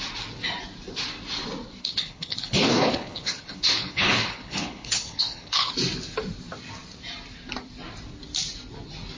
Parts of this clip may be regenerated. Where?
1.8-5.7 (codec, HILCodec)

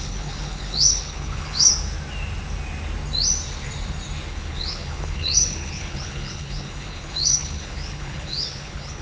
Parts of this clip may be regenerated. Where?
0.0-1.7 (codec, HILCodec); 4.3-9.0